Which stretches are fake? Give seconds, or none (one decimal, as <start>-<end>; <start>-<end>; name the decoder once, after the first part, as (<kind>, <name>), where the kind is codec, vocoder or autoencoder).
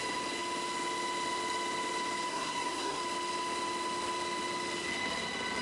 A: 2.3-3.0 (codec, SNAC)